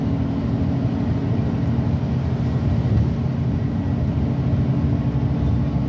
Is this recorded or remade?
recorded